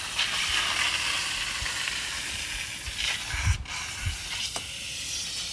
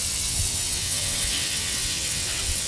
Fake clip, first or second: second